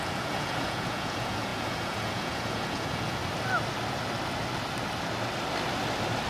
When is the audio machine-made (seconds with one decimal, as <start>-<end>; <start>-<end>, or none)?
0.0-3.2